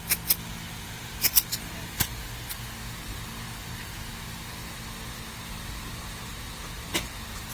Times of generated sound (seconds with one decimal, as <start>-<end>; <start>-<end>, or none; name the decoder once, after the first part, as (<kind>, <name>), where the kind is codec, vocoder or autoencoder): none